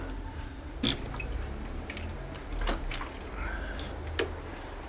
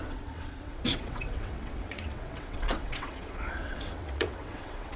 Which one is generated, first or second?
second